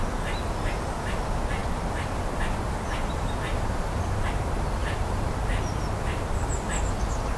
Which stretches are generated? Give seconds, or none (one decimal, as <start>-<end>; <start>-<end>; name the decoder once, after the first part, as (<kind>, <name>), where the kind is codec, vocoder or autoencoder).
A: none